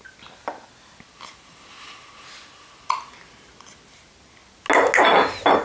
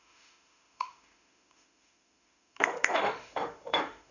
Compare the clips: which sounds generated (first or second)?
second